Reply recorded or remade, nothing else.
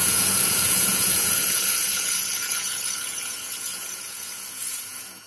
remade